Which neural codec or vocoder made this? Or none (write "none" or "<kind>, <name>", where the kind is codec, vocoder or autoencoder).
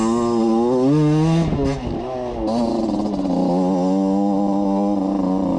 none